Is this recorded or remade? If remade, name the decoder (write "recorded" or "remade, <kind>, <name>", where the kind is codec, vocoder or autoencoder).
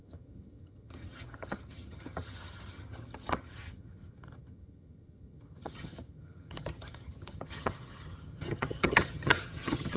remade, vocoder, HiFi-GAN